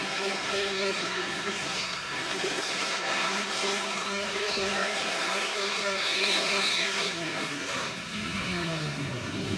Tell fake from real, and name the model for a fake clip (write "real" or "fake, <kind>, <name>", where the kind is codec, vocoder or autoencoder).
fake, codec, SNAC